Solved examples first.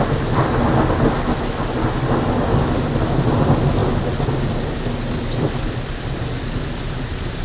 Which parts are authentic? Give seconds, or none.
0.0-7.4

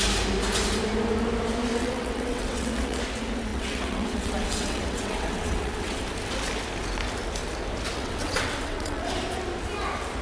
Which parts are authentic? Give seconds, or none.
0.0-1.8; 3.0-3.5; 6.0-7.9; 9.1-10.2

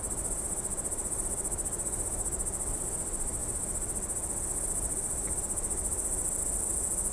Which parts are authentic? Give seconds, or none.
0.0-7.1

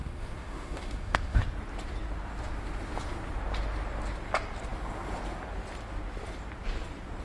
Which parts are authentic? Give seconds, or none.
1.4-7.2

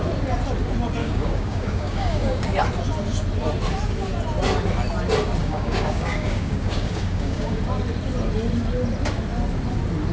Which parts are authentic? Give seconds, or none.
0.0-1.0; 2.6-5.4; 7.6-10.1

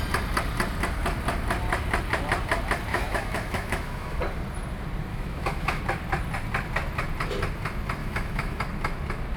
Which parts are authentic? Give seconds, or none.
0.0-2.9; 4.2-5.1; 5.8-8.0; 8.6-9.4

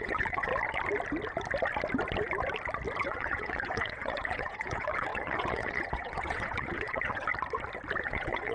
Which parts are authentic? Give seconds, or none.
0.5-3.0; 7.3-8.0

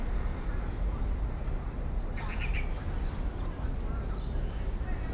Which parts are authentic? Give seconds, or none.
0.0-5.1